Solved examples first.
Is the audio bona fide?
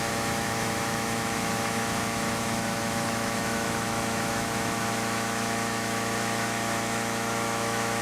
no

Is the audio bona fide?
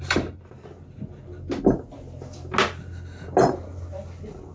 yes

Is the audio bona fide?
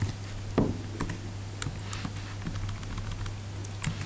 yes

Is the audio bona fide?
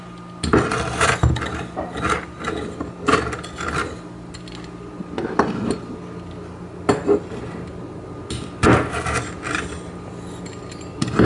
yes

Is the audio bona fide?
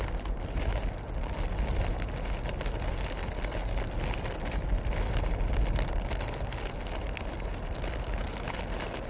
yes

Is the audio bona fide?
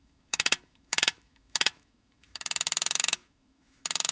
no